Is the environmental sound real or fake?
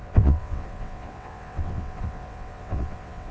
fake